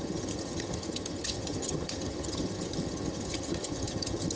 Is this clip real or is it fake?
fake